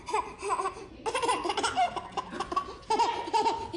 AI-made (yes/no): no